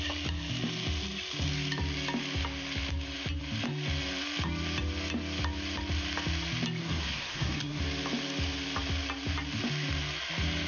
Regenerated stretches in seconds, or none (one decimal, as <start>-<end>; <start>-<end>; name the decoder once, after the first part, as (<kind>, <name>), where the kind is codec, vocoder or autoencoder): 6.8-7.8 (codec, SNAC)